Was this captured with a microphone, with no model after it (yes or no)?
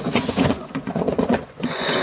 no